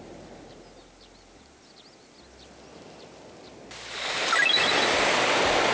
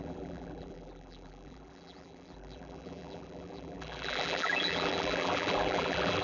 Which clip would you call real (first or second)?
first